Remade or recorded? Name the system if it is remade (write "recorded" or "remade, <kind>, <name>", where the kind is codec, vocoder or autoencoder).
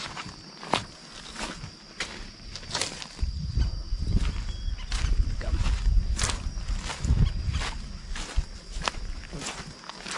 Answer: recorded